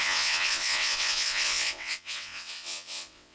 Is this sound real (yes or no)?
no